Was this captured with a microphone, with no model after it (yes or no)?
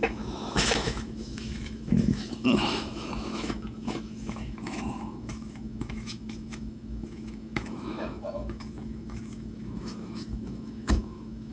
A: no